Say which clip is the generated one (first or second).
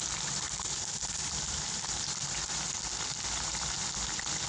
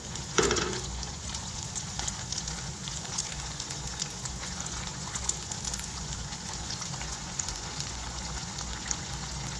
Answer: second